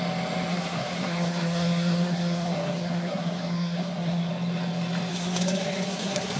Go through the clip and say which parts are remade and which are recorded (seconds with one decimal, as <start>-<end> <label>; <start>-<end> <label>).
0.0-0.5 recorded; 0.5-4.3 remade; 4.3-5.1 recorded; 5.1-6.4 remade